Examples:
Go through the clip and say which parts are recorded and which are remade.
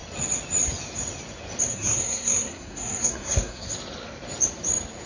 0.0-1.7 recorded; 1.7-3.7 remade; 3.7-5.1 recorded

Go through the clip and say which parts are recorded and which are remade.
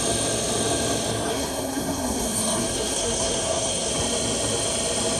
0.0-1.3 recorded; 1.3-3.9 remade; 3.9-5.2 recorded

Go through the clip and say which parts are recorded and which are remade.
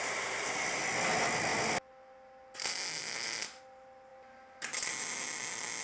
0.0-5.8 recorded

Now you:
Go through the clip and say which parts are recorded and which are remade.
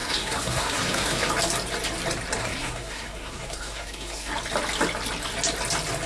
0.0-1.3 remade; 1.3-2.4 recorded; 2.4-4.3 remade; 4.3-6.1 recorded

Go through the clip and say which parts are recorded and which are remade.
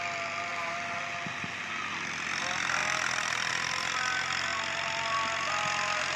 0.0-6.2 recorded